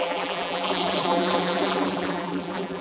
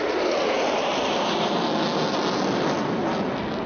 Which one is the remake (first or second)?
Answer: first